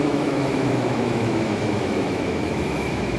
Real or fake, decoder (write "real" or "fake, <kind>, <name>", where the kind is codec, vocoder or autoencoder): fake, autoencoder, DAC-VAE